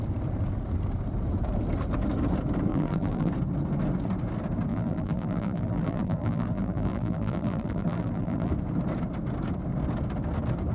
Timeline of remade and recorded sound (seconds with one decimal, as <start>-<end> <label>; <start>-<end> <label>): 0.0-2.7 recorded; 2.7-3.3 remade; 3.3-4.7 recorded; 4.7-8.5 remade; 8.5-10.7 recorded